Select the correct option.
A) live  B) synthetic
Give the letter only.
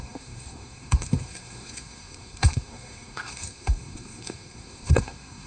B